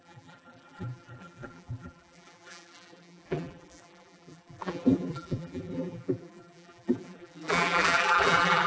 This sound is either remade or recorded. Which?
remade